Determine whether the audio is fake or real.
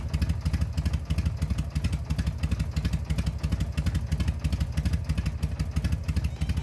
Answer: real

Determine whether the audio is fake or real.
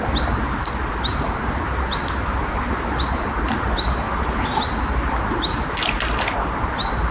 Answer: real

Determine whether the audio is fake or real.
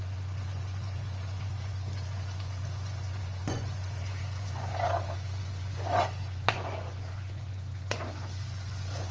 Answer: fake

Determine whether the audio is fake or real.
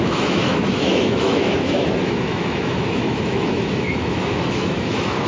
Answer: fake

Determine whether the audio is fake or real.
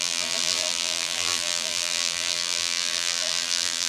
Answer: fake